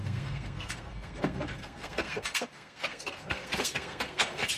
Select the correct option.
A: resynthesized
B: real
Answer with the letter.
A